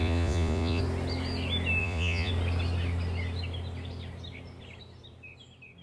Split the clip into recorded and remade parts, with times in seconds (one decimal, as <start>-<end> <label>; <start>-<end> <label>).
0.0-0.8 remade; 0.8-1.8 recorded; 1.8-2.3 remade; 2.3-5.8 recorded